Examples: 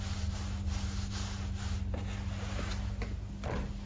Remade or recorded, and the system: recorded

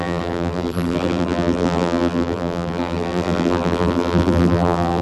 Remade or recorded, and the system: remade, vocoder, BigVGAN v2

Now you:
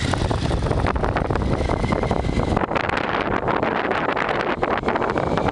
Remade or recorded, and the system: recorded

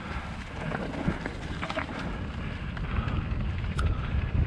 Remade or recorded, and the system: recorded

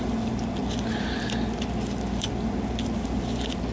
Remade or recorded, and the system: recorded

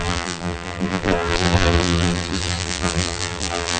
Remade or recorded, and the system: remade, vocoder, BigVGAN v2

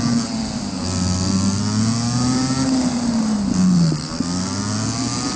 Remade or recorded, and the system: recorded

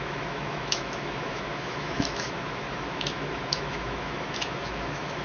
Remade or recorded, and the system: remade, autoencoder, DAC-VAE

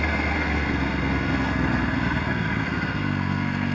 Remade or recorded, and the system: remade, codec, SNAC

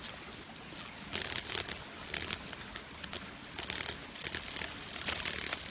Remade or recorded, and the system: recorded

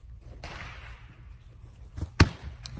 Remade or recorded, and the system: recorded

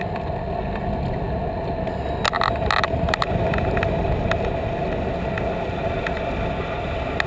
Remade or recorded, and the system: recorded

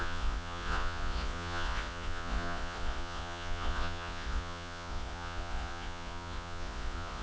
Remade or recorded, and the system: remade, vocoder, Vocos